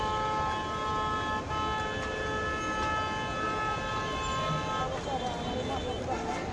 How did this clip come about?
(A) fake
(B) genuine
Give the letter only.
B